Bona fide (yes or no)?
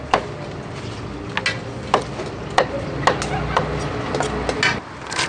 yes